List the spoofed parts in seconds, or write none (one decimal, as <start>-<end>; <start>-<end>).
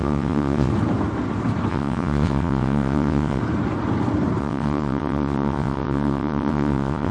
0.0-0.7; 1.7-3.4; 4.4-7.1